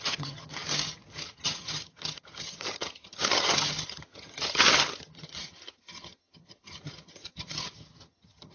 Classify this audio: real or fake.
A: fake